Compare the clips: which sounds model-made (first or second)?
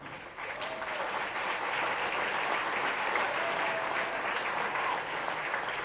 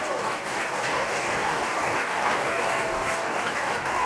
second